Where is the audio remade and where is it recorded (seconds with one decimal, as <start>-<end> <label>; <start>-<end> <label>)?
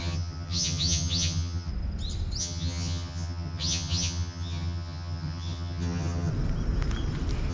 0.0-1.7 remade; 1.7-2.4 recorded; 2.4-6.3 remade; 6.3-7.5 recorded